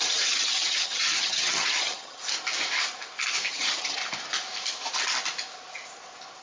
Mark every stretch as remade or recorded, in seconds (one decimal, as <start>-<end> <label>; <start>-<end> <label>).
0.0-2.2 remade; 2.2-3.5 recorded; 3.5-4.0 remade; 4.0-6.4 recorded